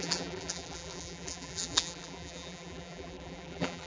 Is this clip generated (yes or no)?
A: yes